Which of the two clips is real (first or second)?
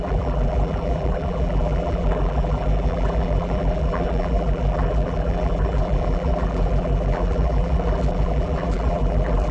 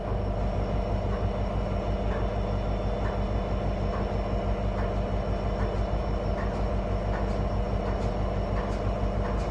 second